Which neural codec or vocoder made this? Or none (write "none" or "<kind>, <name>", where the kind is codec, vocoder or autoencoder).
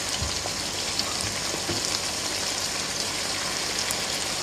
none